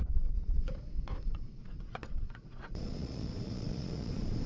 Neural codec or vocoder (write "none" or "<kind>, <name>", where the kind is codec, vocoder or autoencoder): vocoder, Vocos